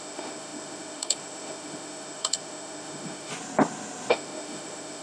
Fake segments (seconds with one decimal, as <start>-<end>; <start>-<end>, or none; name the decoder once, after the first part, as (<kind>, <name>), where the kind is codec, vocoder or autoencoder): 0.0-3.3 (autoencoder, DAC-VAE); 4.1-5.0

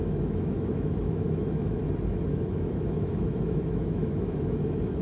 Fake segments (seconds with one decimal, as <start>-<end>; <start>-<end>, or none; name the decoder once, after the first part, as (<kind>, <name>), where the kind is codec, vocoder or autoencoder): 0.0-1.8 (autoencoder, DAC-VAE); 2.3-5.0

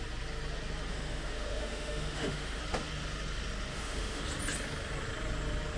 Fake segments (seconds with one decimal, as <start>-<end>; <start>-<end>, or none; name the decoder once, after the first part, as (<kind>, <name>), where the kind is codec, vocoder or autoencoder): 0.9-2.6 (autoencoder, DAC-VAE); 3.7-4.2

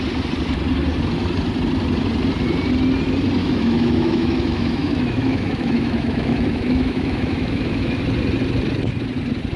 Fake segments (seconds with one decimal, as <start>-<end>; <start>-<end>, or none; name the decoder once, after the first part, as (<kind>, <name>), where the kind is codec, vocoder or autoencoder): 3.4-8.0 (autoencoder, DAC-VAE)

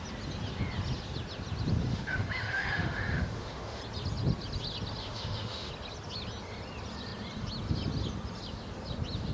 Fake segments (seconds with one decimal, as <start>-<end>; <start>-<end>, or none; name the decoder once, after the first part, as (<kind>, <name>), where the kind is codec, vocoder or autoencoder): 1.9-3.8 (autoencoder, DAC-VAE); 5.0-5.7

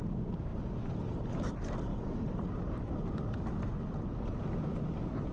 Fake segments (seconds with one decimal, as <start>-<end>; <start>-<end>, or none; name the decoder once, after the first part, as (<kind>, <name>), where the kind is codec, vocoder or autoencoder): none

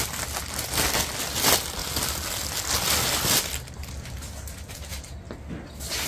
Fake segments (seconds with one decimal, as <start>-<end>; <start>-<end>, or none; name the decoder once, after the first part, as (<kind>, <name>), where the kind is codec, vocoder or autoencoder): none

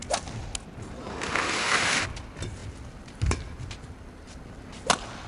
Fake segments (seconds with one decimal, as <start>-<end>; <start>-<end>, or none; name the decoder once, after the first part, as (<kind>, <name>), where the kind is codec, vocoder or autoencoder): 1.1-2.0 (autoencoder, DAC-VAE)